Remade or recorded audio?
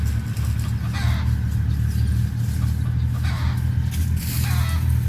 recorded